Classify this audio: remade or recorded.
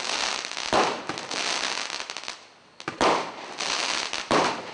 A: recorded